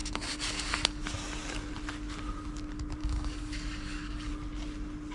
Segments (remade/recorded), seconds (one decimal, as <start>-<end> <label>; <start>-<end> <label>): 0.0-1.0 remade; 1.0-3.0 recorded; 3.0-4.3 remade; 4.3-5.1 recorded